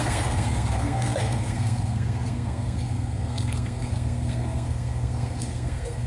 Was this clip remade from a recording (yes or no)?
yes